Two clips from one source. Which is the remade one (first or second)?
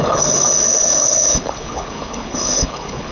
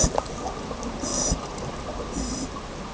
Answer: first